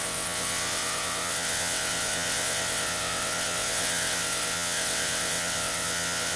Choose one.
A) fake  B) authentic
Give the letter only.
A